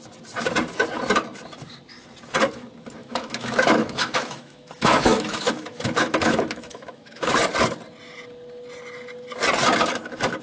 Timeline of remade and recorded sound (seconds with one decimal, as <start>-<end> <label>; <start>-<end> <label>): 0.0-3.0 recorded; 3.0-7.3 remade; 7.3-10.4 recorded